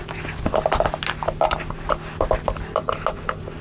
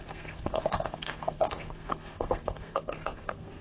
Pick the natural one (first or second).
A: first